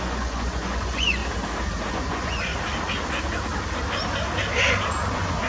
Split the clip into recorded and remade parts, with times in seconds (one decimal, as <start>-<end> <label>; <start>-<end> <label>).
0.0-1.2 remade; 1.2-1.9 recorded; 1.9-2.5 remade; 2.5-5.1 recorded; 5.1-5.5 remade